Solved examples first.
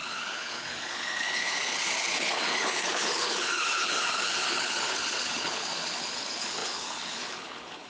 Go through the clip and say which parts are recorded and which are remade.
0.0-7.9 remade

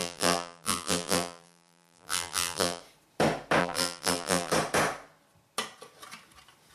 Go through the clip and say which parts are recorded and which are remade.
0.0-2.8 remade; 2.8-3.6 recorded; 3.6-4.5 remade; 4.5-6.7 recorded

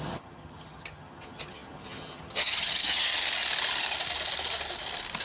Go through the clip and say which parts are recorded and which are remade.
0.0-3.1 remade; 3.1-5.2 recorded

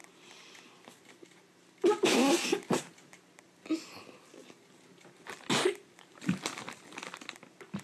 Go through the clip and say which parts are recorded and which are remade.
0.0-2.8 remade; 2.8-7.8 recorded

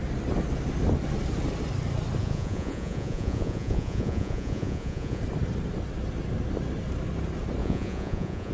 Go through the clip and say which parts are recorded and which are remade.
0.0-2.2 recorded; 2.2-5.2 remade; 5.2-7.6 recorded; 7.6-8.5 remade

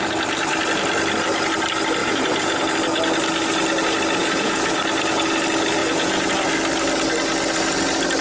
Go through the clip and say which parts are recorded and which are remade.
0.0-2.0 recorded; 2.0-2.6 remade; 2.6-4.2 recorded; 4.2-4.8 remade; 4.8-5.8 recorded; 5.8-6.3 remade; 6.3-8.2 recorded

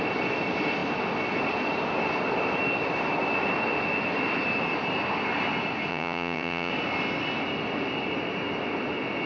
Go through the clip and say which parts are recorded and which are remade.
0.0-5.9 recorded; 5.9-6.7 remade; 6.7-9.3 recorded